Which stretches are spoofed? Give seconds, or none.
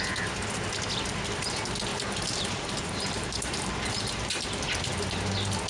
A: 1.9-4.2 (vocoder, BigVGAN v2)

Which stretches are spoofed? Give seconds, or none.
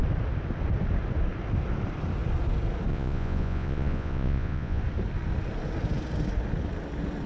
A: 2.9-4.8 (vocoder, Vocos)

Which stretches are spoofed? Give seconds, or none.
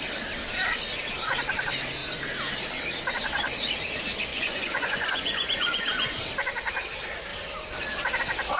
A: 4.3-6.2 (vocoder, Vocos)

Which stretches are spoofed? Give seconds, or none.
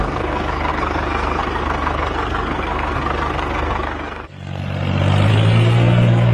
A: 0.0-4.6 (codec, SNAC); 5.3-6.3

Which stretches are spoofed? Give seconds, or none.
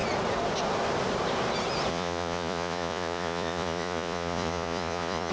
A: 1.9-5.3 (vocoder, Vocos)